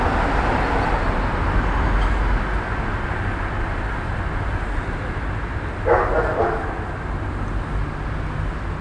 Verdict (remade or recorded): recorded